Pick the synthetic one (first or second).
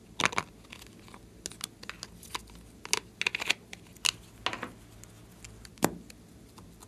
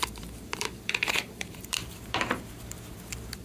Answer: second